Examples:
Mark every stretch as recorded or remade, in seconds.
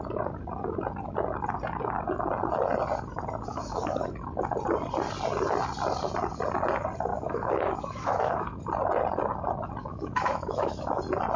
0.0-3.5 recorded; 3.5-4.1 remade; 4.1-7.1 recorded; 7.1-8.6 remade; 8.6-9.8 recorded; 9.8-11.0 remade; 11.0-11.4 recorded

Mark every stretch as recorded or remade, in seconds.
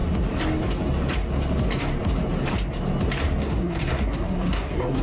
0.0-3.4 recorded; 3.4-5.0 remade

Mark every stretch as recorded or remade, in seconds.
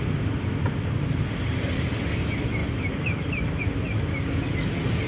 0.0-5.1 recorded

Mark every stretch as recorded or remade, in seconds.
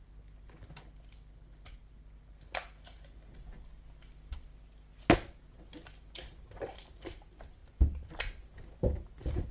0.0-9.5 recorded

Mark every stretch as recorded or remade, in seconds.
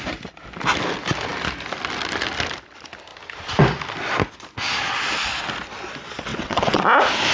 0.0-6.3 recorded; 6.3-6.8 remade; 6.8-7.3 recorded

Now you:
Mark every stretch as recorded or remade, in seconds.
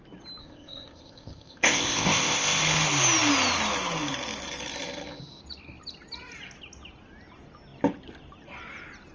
0.0-0.4 recorded; 0.4-2.6 remade; 2.6-9.1 recorded